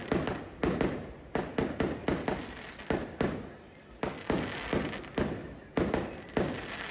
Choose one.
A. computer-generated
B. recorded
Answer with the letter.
B